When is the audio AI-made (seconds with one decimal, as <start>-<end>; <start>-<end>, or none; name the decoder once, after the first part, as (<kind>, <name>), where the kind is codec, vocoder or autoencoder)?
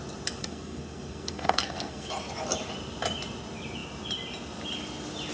0.4-2.1 (codec, SNAC)